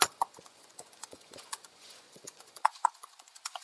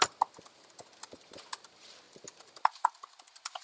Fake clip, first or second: first